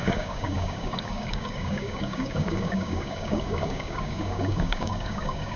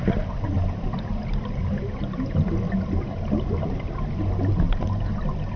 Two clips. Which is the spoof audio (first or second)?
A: first